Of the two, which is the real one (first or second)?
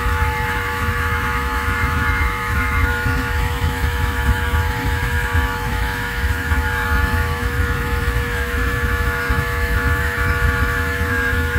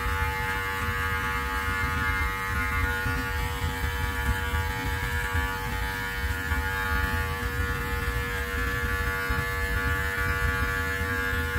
second